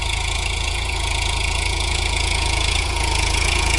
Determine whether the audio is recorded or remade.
remade